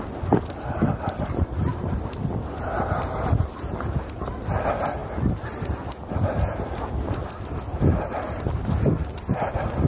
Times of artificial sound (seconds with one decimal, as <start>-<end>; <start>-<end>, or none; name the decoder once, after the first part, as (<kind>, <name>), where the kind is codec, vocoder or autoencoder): none